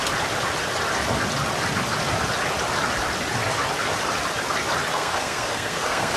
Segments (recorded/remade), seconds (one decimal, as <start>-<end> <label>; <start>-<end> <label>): 0.0-4.9 recorded; 4.9-6.2 remade